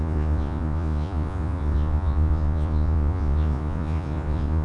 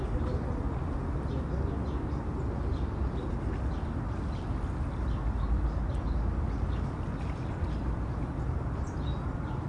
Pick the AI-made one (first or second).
first